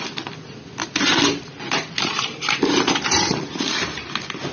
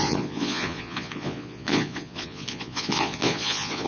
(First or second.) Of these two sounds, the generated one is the second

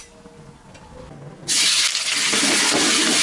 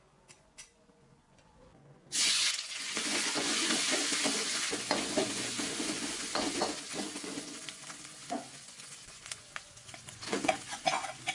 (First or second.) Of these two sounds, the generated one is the second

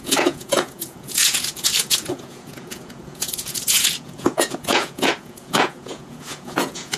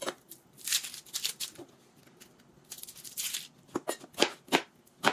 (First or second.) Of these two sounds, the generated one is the first